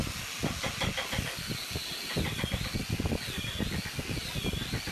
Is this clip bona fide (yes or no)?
yes